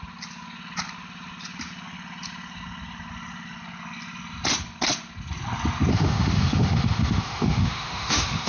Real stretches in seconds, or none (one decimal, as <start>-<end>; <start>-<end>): 0.0-5.9